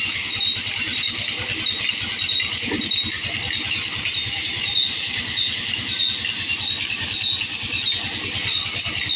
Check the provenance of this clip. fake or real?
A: real